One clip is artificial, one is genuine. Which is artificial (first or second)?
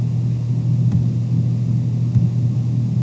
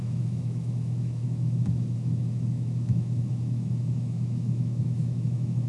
second